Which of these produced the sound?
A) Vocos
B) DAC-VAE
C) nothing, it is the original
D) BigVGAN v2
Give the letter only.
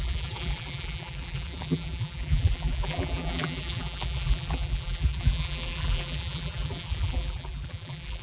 D